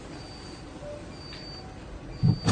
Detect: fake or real fake